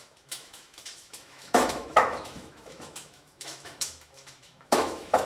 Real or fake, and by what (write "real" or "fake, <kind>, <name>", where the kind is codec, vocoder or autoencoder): fake, autoencoder, DAC-VAE